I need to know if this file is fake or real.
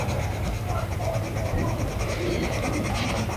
real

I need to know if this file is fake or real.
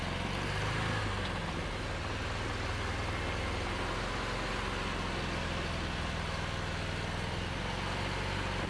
real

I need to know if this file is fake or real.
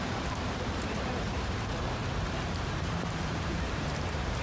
fake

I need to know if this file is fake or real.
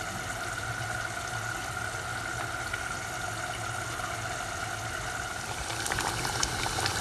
real